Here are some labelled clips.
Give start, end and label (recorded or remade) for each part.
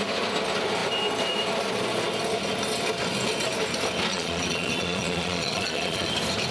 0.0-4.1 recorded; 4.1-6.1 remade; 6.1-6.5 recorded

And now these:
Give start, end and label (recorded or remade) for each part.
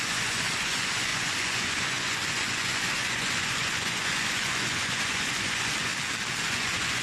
0.0-5.9 remade; 5.9-6.4 recorded; 6.4-7.0 remade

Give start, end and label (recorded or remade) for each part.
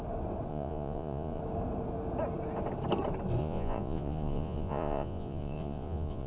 0.0-0.5 recorded; 0.5-1.4 remade; 1.4-3.4 recorded; 3.4-6.3 remade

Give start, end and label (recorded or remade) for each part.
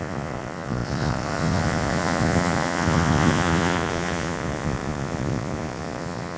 0.0-6.4 remade